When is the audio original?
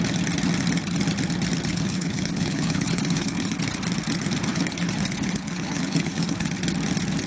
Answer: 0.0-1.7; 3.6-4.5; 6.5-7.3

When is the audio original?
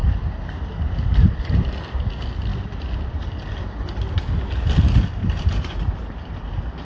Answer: 1.9-5.2; 5.9-6.8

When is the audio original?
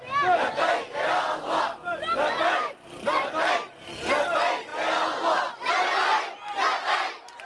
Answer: 0.0-7.5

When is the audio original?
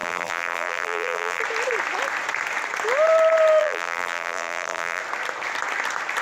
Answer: 1.4-3.6; 5.0-6.2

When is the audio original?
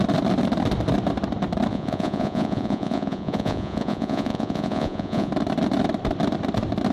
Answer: 0.0-1.7; 5.3-6.9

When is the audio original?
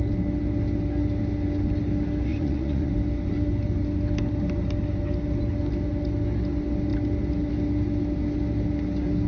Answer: 0.0-2.3; 2.9-9.3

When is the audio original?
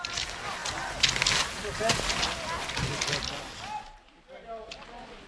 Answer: 0.0-5.3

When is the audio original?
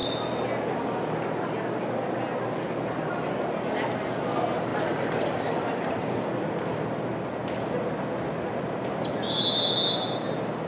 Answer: 0.0-4.7; 6.7-10.7